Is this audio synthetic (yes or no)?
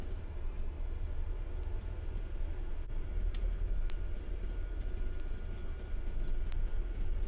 no